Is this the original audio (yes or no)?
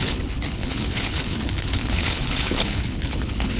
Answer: no